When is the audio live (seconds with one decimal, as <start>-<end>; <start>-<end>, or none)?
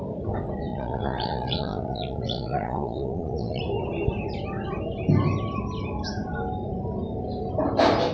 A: 0.0-0.7; 3.6-8.1